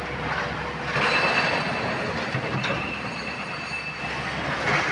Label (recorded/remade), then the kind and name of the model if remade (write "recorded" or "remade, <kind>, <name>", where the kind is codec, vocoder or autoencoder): recorded